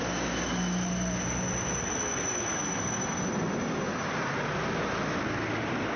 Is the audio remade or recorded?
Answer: recorded